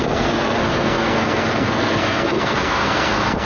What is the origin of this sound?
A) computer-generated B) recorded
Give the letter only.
A